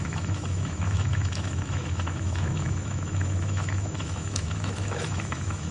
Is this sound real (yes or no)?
no